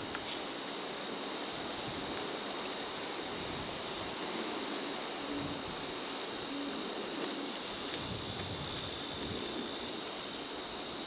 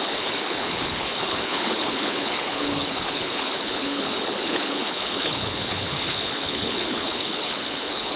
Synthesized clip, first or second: second